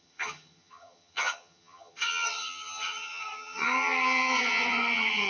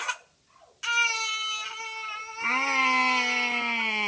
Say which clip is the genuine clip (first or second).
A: second